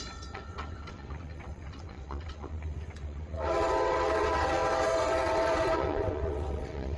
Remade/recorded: remade